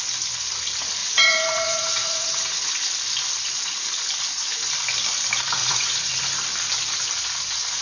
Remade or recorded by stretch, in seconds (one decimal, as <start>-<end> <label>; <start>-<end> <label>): 0.0-1.0 recorded; 1.0-2.7 remade; 2.7-5.6 recorded; 5.6-6.2 remade; 6.2-7.8 recorded